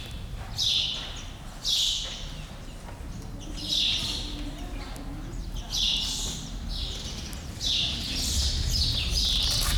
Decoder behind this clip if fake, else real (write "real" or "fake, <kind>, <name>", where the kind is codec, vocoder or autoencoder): real